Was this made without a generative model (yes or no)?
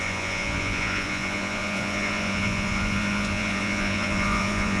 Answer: no